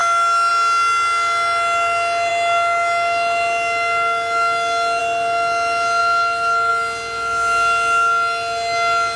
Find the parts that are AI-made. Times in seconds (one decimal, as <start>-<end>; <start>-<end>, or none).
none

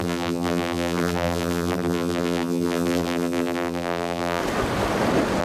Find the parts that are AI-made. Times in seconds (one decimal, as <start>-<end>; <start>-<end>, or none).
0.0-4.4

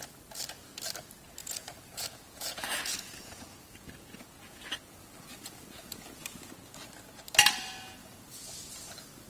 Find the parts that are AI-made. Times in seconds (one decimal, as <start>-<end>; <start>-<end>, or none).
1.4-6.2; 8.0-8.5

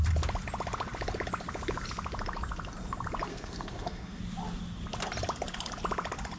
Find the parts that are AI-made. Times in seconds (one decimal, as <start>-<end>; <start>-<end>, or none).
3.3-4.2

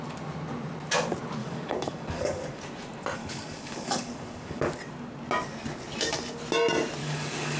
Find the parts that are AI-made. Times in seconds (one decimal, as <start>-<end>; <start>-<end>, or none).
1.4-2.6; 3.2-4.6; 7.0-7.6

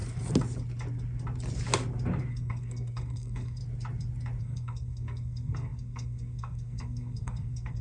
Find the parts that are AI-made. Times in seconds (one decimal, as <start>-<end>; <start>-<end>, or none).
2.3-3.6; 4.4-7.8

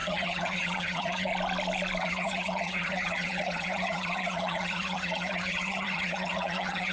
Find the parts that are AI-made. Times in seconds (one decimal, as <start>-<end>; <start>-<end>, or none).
0.0-1.3; 2.0-6.9

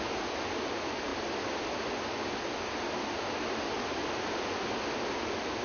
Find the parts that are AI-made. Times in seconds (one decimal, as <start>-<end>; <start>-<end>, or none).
none